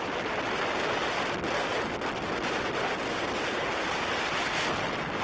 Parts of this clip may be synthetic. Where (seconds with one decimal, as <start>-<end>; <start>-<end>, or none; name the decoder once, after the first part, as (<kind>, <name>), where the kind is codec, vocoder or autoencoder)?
none